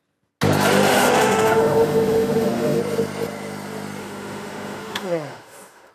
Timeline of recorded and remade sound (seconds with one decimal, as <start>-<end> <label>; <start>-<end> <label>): 0.0-0.9 recorded; 0.9-2.8 remade; 2.8-4.0 recorded; 4.0-5.9 remade